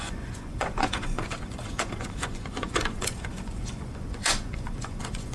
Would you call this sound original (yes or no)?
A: no